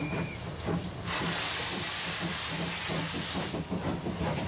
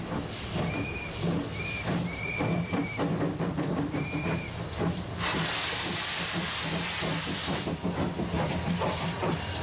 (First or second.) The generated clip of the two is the first